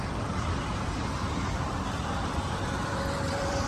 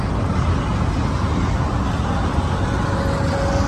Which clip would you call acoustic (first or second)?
second